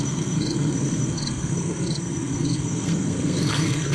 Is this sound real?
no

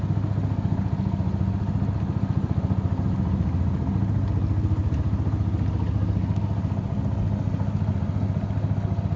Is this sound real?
yes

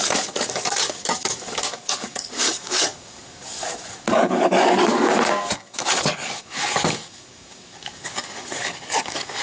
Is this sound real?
no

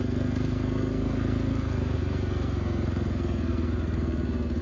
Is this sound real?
no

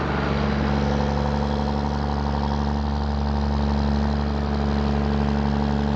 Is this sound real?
yes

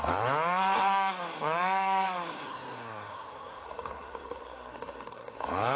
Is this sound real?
no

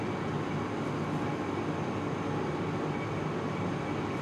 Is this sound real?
yes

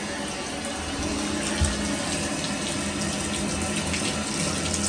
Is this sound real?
yes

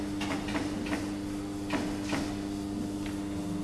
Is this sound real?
yes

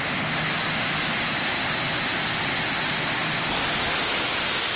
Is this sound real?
yes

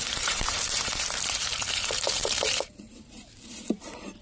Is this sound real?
no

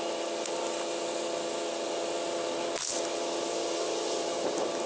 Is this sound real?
yes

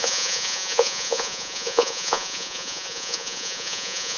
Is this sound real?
no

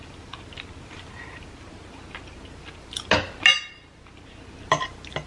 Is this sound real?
yes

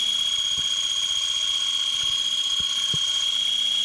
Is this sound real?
yes